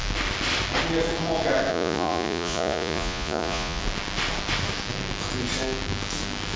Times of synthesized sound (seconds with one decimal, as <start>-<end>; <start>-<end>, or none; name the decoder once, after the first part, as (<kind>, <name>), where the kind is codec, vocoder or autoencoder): 1.7-3.8 (vocoder, Vocos)